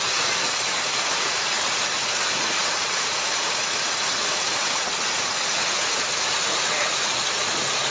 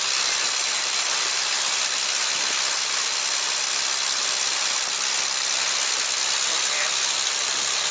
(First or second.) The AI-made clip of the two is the first